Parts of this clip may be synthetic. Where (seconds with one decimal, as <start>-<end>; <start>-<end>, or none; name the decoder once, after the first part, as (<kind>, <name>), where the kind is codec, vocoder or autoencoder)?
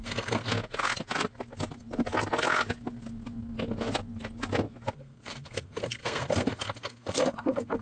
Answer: 0.0-0.5 (codec, SNAC); 4.9-7.8